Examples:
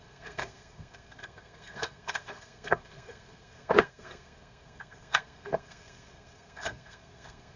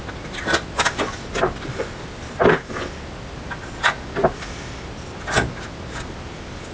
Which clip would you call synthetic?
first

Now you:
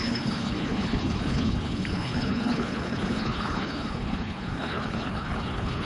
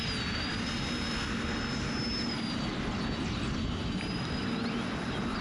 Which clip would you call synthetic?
first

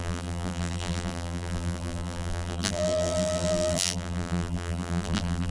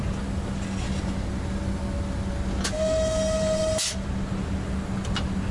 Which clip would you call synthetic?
first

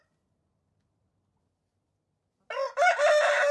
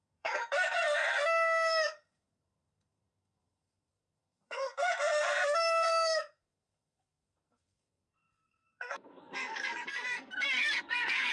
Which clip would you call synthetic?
second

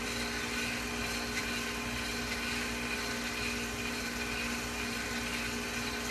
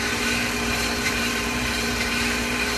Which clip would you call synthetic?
second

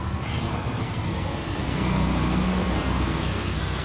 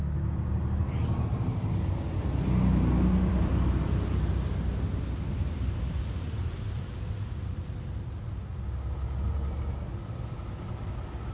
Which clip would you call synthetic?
first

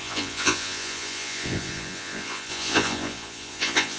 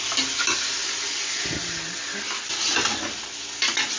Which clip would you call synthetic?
first